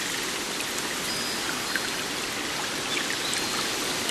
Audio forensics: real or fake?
real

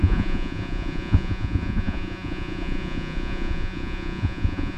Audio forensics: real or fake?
fake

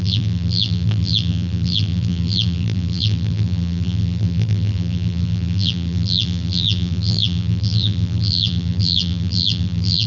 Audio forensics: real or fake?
fake